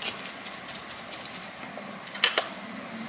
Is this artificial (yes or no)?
no